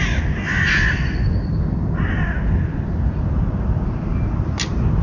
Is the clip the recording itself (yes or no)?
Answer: yes